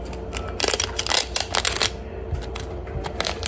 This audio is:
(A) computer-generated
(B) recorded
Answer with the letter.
B